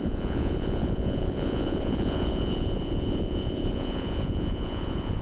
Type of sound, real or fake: fake